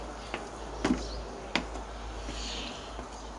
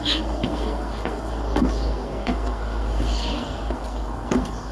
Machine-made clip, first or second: second